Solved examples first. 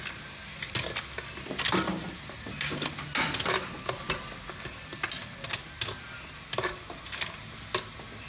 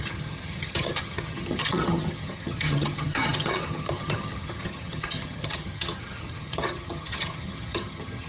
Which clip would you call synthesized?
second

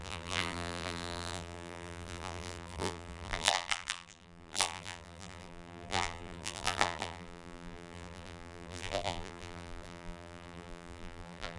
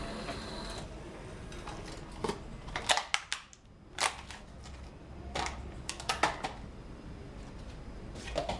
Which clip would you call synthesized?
first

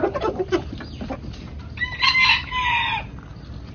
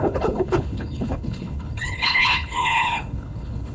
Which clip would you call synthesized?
second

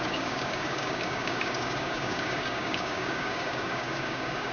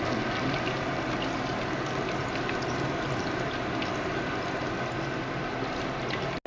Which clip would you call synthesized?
first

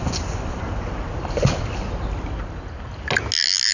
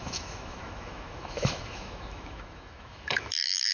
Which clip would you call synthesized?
second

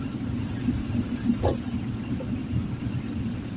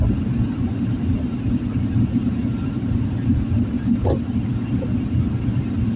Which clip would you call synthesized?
first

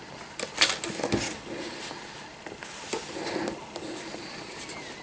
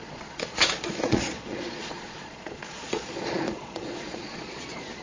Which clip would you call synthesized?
second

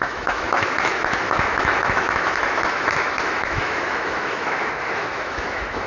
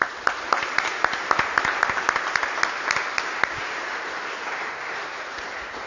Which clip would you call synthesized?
first